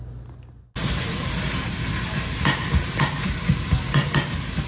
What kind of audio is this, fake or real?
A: real